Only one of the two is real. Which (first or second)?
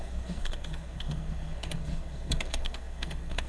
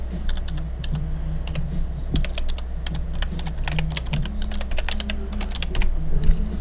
second